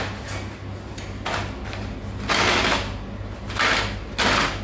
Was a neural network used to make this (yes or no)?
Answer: no